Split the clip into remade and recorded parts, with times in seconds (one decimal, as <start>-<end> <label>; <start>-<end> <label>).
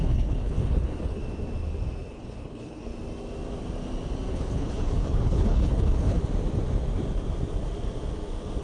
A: 0.0-1.2 remade; 1.2-2.1 recorded; 2.1-2.9 remade; 2.9-4.3 recorded; 4.3-6.2 remade; 6.2-8.6 recorded